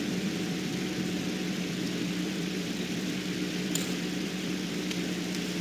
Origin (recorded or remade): remade